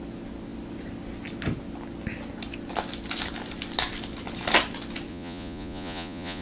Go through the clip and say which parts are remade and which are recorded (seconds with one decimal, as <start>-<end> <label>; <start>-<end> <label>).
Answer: 0.0-5.1 recorded; 5.1-6.4 remade